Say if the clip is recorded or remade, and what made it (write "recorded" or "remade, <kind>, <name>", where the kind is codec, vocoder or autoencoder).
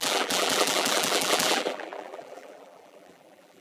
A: remade, vocoder, BigVGAN v2